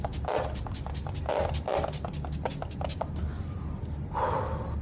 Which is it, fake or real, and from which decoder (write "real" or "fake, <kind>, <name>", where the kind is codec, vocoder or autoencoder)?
real